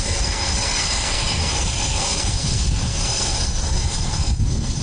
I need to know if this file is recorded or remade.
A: remade